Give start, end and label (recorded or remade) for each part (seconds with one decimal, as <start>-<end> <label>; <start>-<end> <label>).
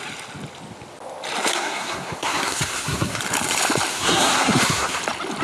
0.0-1.5 recorded; 1.5-3.2 remade; 3.2-3.9 recorded; 3.9-5.0 remade; 5.0-5.4 recorded